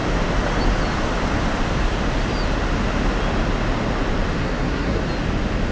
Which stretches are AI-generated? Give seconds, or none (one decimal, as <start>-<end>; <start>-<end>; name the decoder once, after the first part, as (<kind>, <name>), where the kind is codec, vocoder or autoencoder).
4.4-5.0 (codec, SNAC)